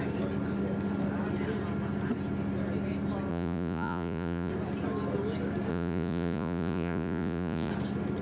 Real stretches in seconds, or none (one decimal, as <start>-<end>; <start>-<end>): 0.0-3.3; 4.5-5.7; 7.7-8.2